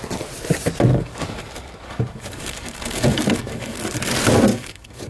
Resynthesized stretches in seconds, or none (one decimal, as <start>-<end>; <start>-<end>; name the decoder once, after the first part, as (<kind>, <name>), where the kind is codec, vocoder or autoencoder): 0.9-4.0 (codec, DAC); 4.5-5.1